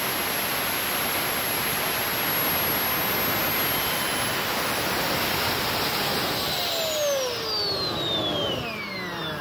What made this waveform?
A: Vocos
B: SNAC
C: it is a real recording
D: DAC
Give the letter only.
C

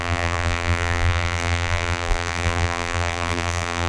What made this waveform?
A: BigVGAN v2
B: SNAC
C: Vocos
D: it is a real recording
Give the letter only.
A